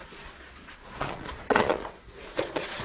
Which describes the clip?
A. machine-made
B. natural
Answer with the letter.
A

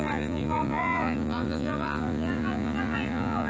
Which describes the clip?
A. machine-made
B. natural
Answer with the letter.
A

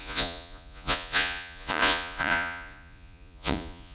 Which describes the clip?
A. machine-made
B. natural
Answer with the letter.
A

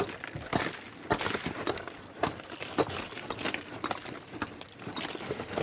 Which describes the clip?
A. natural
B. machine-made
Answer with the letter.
A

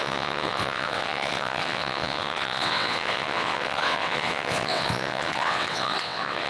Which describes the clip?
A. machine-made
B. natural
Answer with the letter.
A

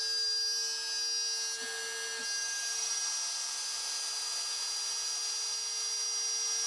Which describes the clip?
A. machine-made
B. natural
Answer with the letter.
B